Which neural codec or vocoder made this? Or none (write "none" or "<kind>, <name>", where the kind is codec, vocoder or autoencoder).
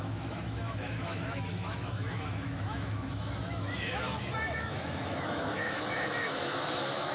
autoencoder, DAC-VAE